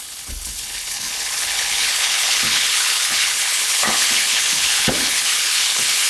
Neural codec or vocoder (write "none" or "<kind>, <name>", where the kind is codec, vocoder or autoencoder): codec, HILCodec